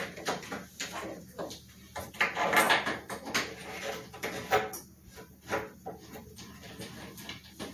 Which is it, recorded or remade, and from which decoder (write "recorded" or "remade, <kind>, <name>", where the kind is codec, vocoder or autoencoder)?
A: recorded